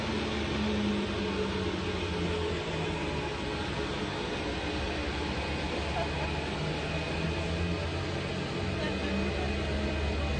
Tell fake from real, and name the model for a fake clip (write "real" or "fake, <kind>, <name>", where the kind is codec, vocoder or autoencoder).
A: real